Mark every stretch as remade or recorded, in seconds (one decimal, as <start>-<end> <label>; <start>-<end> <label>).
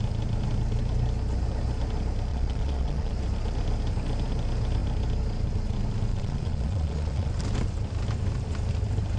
0.0-2.3 recorded; 2.3-3.1 remade; 3.1-6.1 recorded; 6.1-7.3 remade; 7.3-9.2 recorded